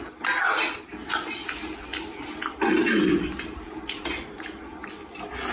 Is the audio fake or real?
real